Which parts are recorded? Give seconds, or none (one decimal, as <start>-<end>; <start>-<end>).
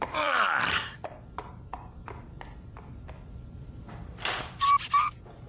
none